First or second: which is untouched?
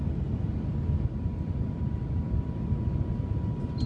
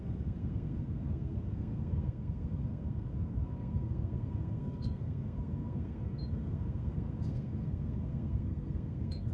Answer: first